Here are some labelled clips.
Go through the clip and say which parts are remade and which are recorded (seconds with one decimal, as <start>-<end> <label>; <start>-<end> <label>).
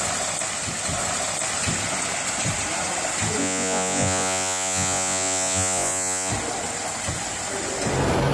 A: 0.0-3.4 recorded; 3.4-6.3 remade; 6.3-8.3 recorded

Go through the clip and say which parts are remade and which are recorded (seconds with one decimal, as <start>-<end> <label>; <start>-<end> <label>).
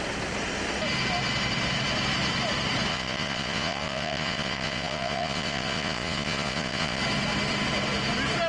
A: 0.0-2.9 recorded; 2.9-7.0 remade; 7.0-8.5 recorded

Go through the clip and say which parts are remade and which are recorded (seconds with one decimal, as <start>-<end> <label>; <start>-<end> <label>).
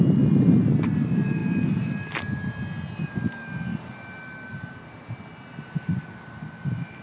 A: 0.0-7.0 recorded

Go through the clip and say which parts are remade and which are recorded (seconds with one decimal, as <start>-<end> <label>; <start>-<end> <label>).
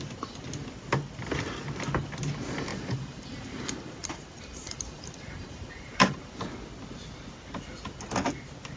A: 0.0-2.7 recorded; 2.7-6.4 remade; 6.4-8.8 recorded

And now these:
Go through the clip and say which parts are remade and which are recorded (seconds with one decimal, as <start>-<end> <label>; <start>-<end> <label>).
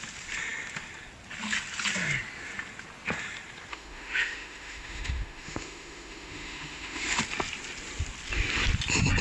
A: 0.0-3.7 recorded; 3.7-7.2 remade; 7.2-9.2 recorded